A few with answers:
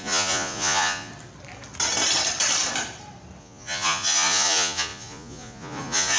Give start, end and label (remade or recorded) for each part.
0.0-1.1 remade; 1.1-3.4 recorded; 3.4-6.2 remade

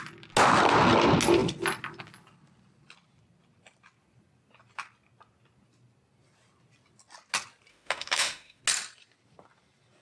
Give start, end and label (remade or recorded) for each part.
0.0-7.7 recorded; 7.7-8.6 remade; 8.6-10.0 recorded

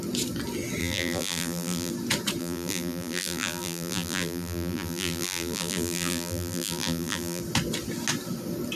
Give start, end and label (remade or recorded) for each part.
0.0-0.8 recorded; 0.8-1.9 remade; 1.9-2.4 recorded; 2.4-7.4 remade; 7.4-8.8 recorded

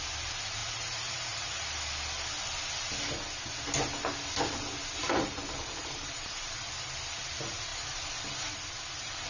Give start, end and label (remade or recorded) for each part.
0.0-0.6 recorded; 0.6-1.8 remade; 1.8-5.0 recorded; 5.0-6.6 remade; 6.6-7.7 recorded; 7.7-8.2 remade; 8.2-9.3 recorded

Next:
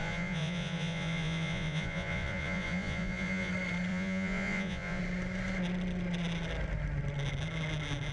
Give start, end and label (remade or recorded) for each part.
0.0-3.5 remade; 3.5-3.9 recorded; 3.9-5.0 remade; 5.0-8.1 recorded

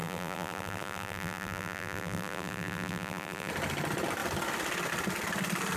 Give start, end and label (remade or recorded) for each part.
0.0-3.5 remade; 3.5-5.8 recorded

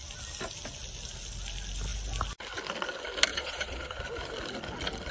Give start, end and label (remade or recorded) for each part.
0.0-3.3 recorded; 3.3-4.0 remade; 4.0-5.1 recorded

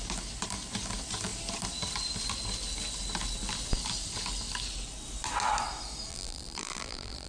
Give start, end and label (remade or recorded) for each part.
0.0-6.1 recorded; 6.1-7.3 remade